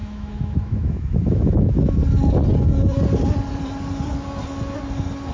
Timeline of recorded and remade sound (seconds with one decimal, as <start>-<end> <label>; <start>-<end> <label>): 0.0-2.0 remade; 2.0-5.3 recorded